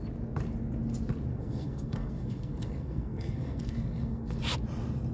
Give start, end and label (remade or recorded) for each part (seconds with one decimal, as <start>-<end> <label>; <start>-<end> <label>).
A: 0.0-1.3 recorded; 1.3-4.4 remade; 4.4-5.1 recorded

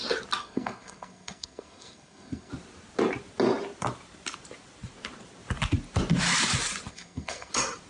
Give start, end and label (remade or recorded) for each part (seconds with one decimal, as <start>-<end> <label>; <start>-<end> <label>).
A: 0.0-0.4 recorded; 0.4-2.5 remade; 2.5-6.9 recorded; 6.9-7.5 remade; 7.5-7.9 recorded

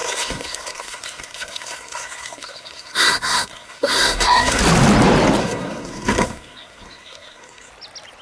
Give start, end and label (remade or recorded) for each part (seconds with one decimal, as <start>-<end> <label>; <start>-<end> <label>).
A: 0.0-4.6 remade; 4.6-5.4 recorded; 5.4-7.7 remade; 7.7-8.2 recorded

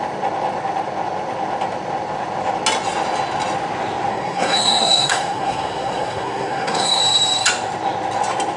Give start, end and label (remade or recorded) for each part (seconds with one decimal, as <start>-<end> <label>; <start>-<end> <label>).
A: 0.0-4.1 recorded; 4.1-7.0 remade; 7.0-8.6 recorded

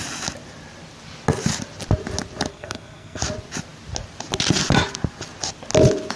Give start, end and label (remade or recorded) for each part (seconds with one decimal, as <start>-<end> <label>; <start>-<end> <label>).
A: 0.0-2.5 recorded; 2.5-3.2 remade; 3.2-6.2 recorded

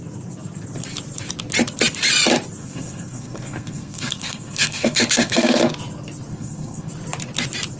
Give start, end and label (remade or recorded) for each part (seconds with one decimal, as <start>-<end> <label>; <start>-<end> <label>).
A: 0.0-2.6 recorded; 2.6-5.6 remade; 5.6-6.3 recorded; 6.3-6.9 remade; 6.9-7.8 recorded

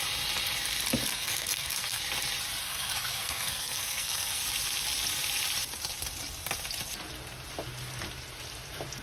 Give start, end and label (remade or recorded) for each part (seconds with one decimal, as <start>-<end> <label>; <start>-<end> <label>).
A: 0.0-1.1 recorded; 1.1-2.0 remade; 2.0-2.6 recorded; 2.6-4.4 remade; 4.4-9.0 recorded